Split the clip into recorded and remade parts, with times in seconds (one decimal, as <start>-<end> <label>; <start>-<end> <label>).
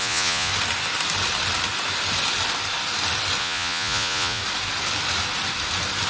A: 0.0-0.5 remade; 0.5-3.4 recorded; 3.4-4.4 remade; 4.4-6.1 recorded